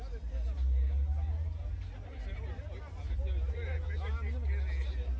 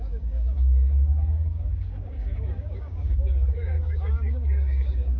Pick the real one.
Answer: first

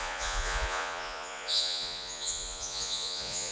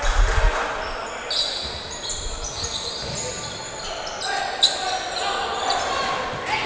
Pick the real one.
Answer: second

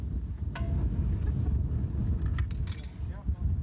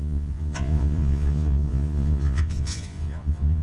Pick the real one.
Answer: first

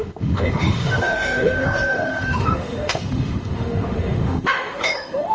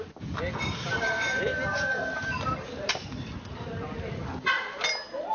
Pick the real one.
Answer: second